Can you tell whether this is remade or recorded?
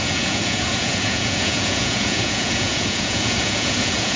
remade